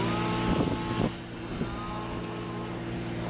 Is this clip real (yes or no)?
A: yes